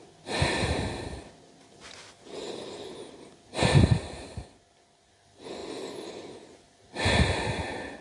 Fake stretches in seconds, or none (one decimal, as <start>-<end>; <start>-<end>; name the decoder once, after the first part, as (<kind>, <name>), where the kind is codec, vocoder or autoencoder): none